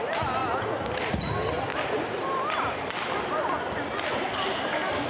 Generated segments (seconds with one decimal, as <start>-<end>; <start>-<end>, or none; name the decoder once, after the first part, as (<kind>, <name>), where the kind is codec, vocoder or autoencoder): 1.7-3.4 (vocoder, BigVGAN v2)